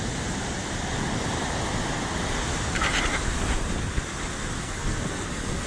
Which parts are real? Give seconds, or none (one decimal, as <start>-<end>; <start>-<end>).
0.0-4.6

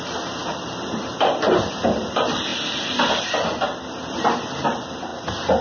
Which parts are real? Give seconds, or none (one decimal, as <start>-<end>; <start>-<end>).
none

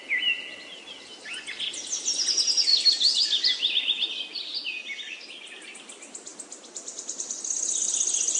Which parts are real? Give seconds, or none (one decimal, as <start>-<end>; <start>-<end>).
0.0-8.4

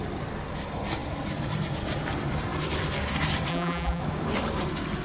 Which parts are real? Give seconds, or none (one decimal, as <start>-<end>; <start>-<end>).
0.0-3.5; 4.0-5.0